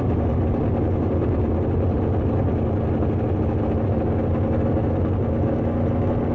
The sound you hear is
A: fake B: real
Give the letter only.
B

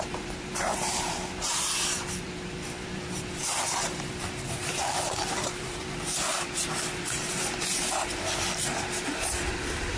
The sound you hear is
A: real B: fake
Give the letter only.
B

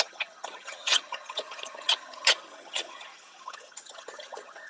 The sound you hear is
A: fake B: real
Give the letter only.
A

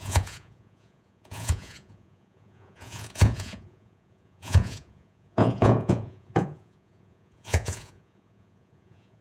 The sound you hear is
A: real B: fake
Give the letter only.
B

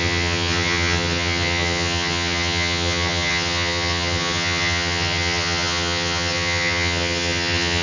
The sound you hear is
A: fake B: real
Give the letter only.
A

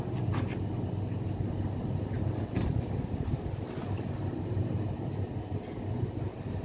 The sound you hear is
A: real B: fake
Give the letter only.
A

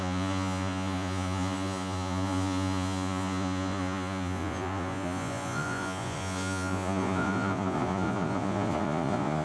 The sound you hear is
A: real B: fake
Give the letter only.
B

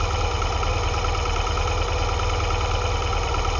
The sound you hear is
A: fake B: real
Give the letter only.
B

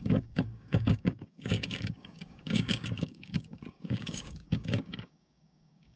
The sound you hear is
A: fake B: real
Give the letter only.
A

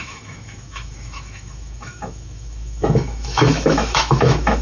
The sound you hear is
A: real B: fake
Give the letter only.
B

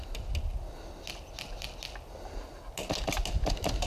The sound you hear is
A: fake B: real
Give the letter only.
B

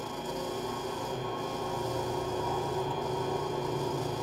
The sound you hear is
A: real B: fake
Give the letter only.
A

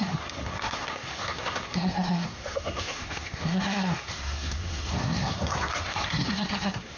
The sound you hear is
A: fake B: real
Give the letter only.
A